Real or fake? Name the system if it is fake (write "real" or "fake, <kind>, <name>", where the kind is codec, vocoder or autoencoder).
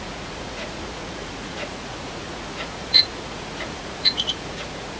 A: fake, vocoder, Vocos